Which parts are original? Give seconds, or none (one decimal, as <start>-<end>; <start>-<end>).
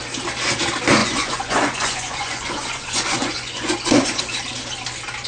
0.0-1.0; 4.2-5.3